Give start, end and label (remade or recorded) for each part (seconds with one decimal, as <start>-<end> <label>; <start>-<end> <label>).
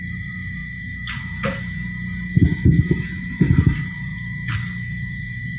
0.0-0.6 remade; 0.6-3.2 recorded; 3.2-4.1 remade; 4.1-5.6 recorded